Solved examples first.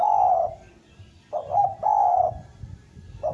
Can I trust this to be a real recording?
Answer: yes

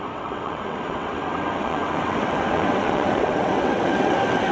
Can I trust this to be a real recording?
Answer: no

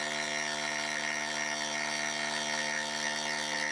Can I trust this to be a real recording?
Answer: yes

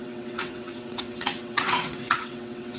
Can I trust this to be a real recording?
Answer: no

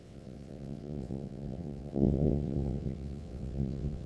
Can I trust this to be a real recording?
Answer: no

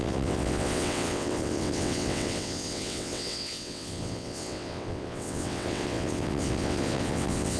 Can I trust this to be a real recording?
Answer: no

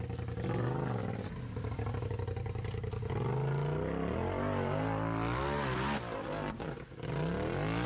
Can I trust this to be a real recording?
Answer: yes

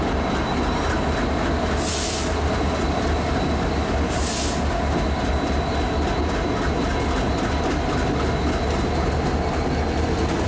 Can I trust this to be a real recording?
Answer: yes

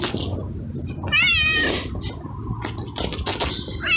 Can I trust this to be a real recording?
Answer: yes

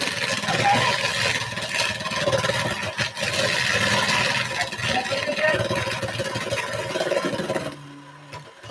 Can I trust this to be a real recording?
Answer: yes